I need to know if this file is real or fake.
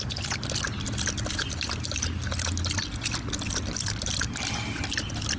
real